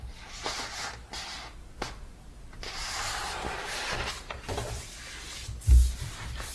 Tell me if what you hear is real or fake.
fake